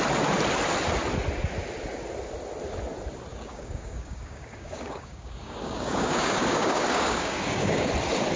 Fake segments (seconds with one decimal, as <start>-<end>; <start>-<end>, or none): 3.3-7.9